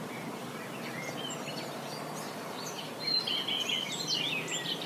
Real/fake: real